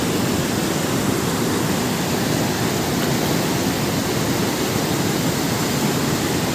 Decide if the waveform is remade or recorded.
recorded